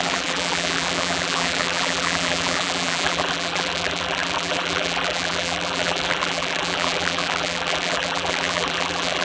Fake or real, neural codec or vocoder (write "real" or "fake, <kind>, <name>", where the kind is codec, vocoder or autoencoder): fake, vocoder, BigVGAN v2